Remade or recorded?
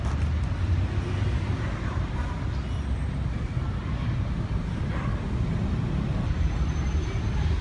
recorded